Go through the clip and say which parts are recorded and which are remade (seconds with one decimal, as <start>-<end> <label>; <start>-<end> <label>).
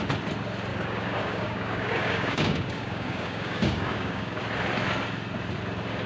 0.0-0.7 recorded; 0.7-4.4 remade; 4.4-6.1 recorded